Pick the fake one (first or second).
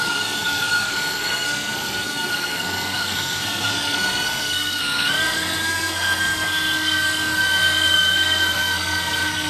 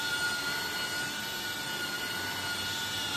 first